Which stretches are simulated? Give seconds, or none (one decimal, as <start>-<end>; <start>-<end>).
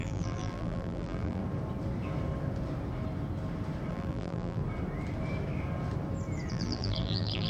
0.0-1.4; 3.9-4.6; 6.5-7.5